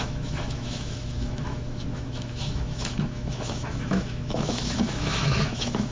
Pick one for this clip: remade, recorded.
remade